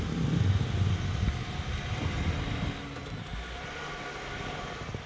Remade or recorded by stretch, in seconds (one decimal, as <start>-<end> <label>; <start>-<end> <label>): 0.0-5.1 recorded